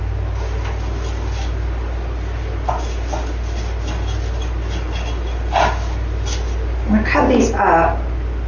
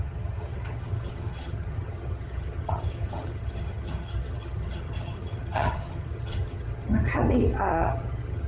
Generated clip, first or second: second